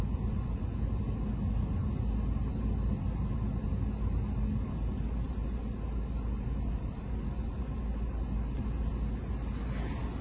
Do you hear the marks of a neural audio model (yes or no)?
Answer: no